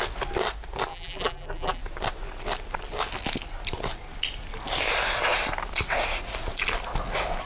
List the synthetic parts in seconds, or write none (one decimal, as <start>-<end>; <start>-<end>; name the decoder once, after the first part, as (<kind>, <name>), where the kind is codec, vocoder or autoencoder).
0.9-1.8 (vocoder, BigVGAN v2)

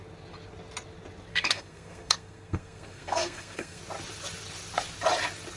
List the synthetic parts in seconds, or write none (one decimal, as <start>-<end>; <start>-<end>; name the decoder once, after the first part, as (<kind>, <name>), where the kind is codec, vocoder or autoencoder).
1.3-3.8 (codec, SNAC)